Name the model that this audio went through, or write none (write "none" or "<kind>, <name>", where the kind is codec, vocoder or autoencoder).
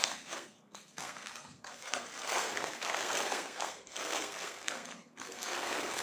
codec, SNAC